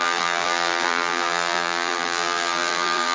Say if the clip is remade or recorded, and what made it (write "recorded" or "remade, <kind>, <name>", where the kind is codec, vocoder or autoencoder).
remade, vocoder, BigVGAN v2